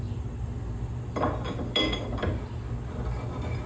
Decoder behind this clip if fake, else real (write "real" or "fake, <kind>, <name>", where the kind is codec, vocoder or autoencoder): real